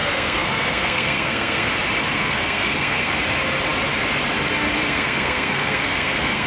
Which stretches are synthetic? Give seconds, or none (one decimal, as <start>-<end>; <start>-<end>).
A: 0.0-1.7; 2.1-3.1; 4.8-6.5